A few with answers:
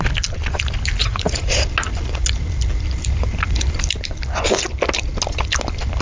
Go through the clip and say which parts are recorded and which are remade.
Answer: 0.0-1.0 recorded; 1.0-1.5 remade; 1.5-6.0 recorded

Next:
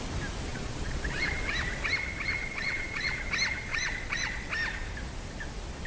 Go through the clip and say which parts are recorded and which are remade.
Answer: 0.0-0.5 recorded; 0.5-1.4 remade; 1.4-2.4 recorded; 2.4-3.2 remade; 3.2-3.7 recorded; 3.7-4.5 remade; 4.5-5.9 recorded

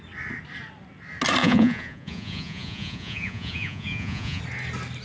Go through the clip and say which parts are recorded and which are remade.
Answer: 0.0-1.4 recorded; 1.4-4.4 remade; 4.4-5.0 recorded

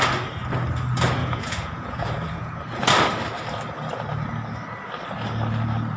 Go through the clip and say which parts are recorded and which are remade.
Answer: 0.0-1.2 recorded; 1.2-2.6 remade; 2.6-6.0 recorded

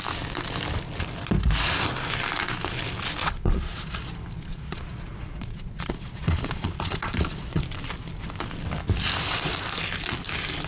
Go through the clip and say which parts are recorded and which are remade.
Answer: 0.0-3.2 recorded; 3.2-3.9 remade; 3.9-4.5 recorded; 4.5-7.6 remade; 7.6-10.7 recorded

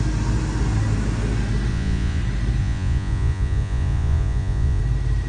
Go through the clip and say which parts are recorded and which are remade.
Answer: 0.0-1.7 recorded; 1.7-2.2 remade; 2.2-2.6 recorded; 2.6-4.8 remade; 4.8-5.3 recorded

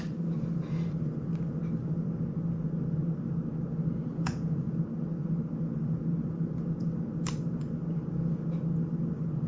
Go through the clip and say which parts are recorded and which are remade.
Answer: 0.0-4.1 recorded; 4.1-4.7 remade; 4.7-9.5 recorded

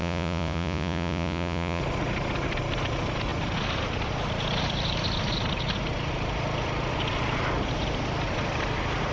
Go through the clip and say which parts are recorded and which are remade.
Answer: 0.0-1.8 remade; 1.8-9.1 recorded